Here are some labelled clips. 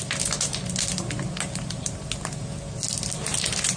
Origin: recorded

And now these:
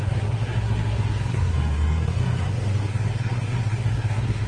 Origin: remade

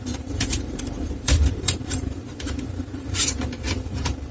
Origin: remade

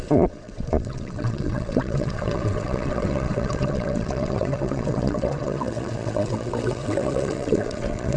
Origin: remade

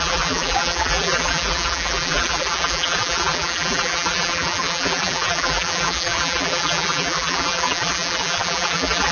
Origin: remade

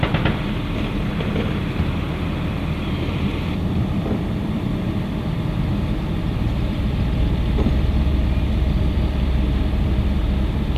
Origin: remade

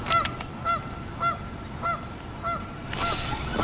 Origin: recorded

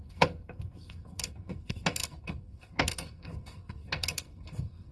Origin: remade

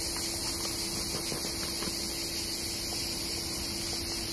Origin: recorded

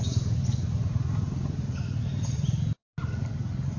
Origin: recorded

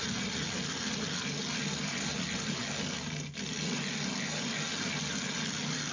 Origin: recorded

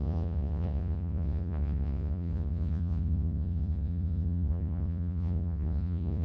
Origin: remade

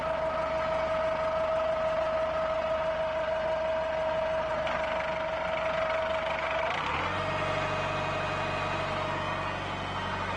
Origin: recorded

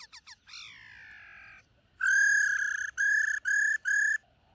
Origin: recorded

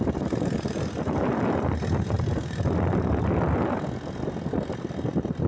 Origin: recorded